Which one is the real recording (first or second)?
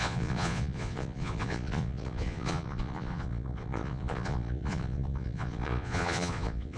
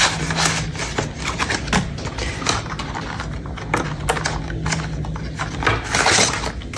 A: second